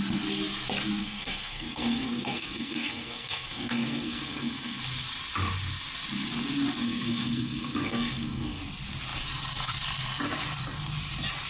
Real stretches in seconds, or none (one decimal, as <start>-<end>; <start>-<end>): 0.0-1.0; 4.8-6.8; 8.6-11.5

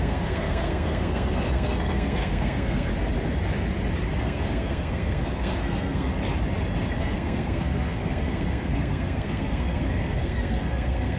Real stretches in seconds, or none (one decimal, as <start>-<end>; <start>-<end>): 2.9-4.2; 6.1-7.0

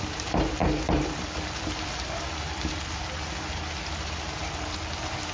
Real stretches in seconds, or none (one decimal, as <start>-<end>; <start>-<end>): 0.0-5.3

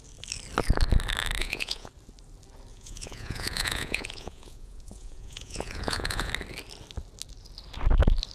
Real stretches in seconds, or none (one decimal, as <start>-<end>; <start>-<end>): 0.0-1.4; 1.9-2.7; 6.3-8.3

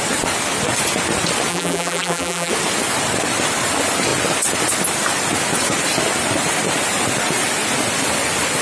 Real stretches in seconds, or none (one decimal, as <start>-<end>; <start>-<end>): 0.0-1.5; 2.5-8.6

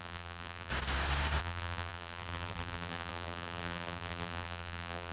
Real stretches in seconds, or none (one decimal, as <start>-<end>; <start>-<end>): 0.7-1.4

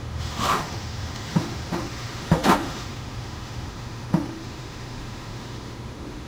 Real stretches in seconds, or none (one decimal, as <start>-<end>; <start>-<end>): none